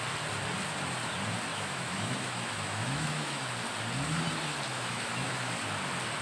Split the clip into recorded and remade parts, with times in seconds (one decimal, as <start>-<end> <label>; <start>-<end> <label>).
0.0-1.5 recorded; 1.5-3.5 remade; 3.5-4.7 recorded; 4.7-5.5 remade; 5.5-6.2 recorded